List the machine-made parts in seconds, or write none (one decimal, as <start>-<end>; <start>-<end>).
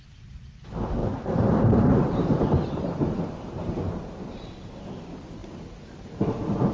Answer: 1.0-5.0; 5.4-6.3